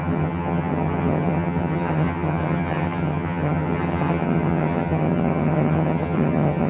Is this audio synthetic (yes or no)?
yes